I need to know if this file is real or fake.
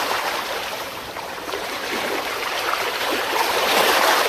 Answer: fake